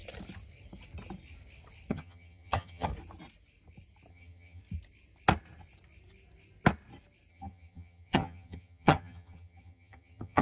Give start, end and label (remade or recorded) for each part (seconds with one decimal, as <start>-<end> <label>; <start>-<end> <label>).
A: 0.0-1.9 recorded; 1.9-2.9 remade; 2.9-4.1 recorded; 4.1-4.6 remade; 4.6-7.3 recorded; 7.3-10.4 remade